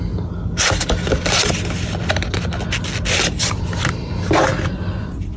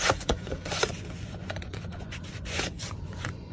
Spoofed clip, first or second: second